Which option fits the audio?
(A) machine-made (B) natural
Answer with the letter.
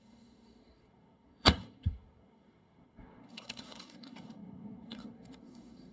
A